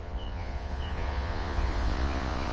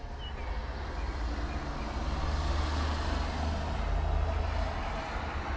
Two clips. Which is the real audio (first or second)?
second